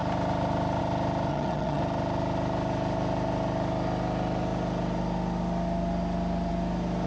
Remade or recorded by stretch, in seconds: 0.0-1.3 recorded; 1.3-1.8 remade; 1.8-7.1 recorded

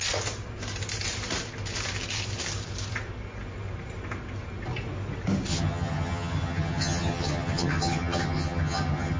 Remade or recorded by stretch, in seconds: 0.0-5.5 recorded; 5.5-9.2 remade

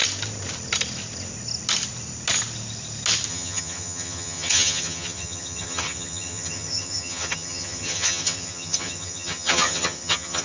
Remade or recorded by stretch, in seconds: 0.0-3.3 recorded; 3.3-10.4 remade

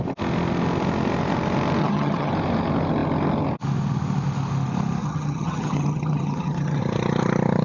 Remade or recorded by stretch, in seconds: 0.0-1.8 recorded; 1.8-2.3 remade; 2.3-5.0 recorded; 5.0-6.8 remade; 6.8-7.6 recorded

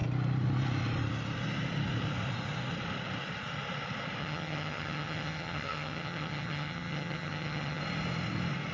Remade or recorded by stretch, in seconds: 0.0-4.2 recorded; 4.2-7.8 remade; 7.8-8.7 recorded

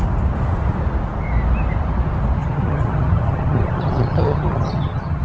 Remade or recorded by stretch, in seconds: 0.0-2.4 recorded; 2.4-5.2 remade